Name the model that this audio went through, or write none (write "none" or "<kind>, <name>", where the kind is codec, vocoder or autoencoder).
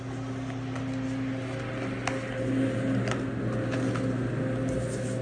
none